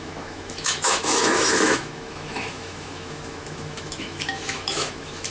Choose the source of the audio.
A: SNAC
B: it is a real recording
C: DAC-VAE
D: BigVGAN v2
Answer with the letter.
C